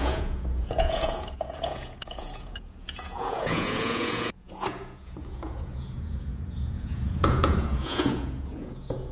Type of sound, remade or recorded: remade